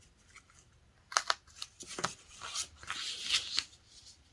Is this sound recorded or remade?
recorded